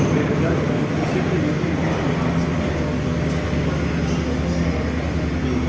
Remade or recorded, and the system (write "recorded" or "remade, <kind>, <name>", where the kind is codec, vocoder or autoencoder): recorded